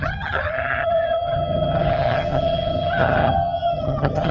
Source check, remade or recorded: remade